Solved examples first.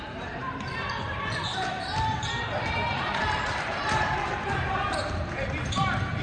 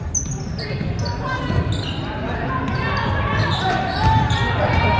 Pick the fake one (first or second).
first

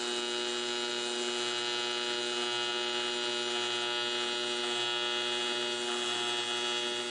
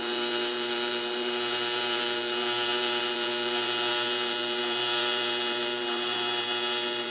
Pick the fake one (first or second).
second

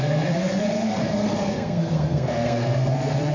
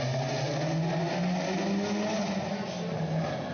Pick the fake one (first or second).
first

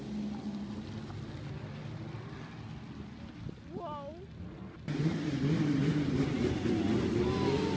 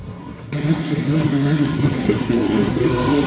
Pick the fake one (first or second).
second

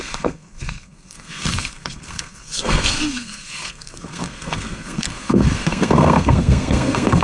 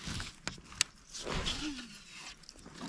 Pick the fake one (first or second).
first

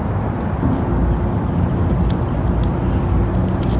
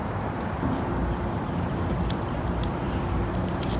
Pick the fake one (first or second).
second